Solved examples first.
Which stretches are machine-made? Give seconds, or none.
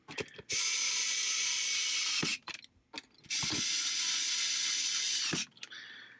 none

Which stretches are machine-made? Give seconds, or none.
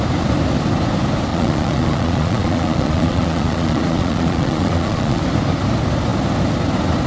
1.3-5.2 (vocoder, Vocos)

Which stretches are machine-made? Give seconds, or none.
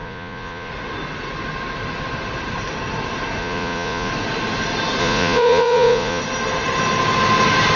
0.0-0.7 (vocoder, Vocos); 3.4-4.1; 5.0-6.2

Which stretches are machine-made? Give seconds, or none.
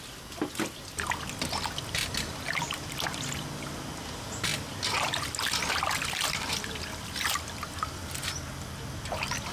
none